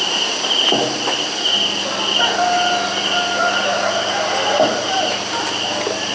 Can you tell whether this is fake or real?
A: real